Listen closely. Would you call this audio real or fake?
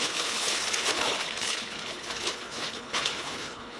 fake